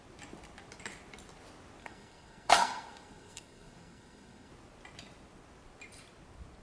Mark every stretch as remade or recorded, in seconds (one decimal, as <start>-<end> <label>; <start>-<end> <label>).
0.0-1.8 recorded; 1.8-4.5 remade; 4.5-6.6 recorded